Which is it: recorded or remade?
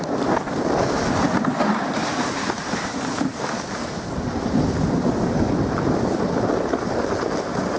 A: recorded